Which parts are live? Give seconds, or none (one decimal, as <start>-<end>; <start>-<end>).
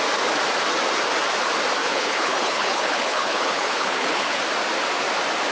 0.0-1.8; 4.4-5.5